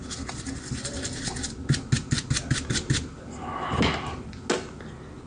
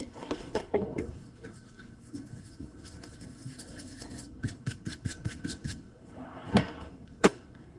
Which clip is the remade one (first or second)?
second